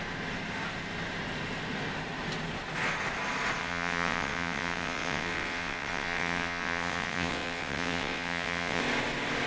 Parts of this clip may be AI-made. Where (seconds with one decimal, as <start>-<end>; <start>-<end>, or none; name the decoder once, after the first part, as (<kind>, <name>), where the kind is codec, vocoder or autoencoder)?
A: 3.6-8.8 (vocoder, WaveNeXt)